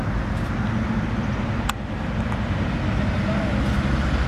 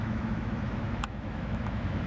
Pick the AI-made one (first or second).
second